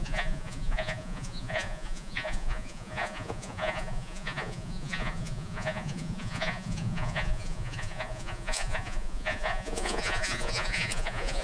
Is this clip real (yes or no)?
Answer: no